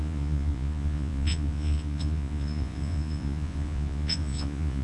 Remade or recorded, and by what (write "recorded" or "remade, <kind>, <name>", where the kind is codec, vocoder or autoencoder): remade, vocoder, Vocos